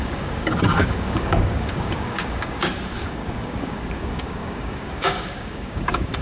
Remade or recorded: remade